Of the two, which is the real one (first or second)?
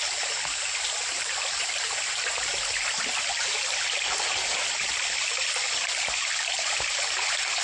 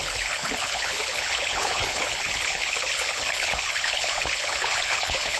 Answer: first